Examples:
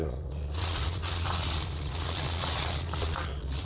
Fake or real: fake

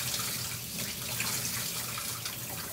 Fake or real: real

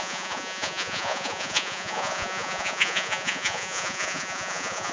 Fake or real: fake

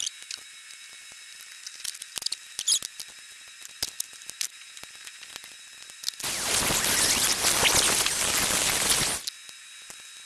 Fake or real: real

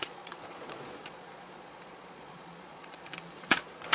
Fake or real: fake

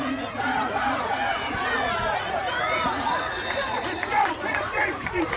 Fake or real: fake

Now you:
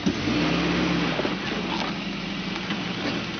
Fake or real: real